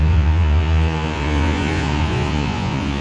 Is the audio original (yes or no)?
no